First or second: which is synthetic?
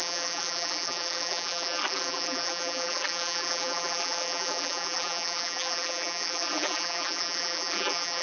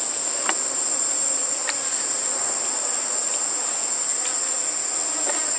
first